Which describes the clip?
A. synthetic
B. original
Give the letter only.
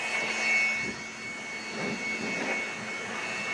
B